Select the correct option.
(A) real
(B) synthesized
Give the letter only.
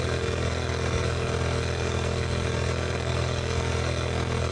B